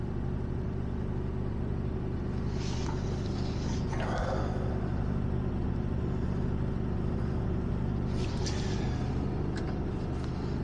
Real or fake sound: real